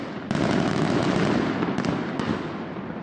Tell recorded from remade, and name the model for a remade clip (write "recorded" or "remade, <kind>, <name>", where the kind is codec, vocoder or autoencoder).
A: recorded